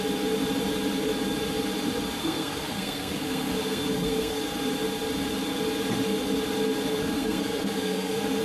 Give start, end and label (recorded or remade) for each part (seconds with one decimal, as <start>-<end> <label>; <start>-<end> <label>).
0.0-2.2 recorded; 2.2-4.4 remade; 4.4-6.9 recorded; 6.9-8.4 remade